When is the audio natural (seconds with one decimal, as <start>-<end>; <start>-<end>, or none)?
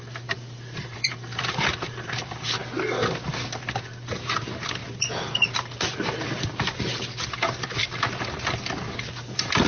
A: 0.0-0.8; 2.6-4.8; 6.6-9.7